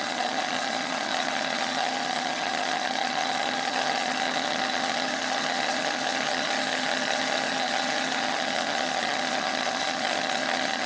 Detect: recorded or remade remade